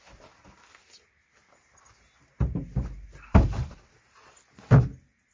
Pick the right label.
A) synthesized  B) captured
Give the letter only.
B